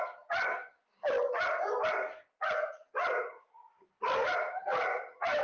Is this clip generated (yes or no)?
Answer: yes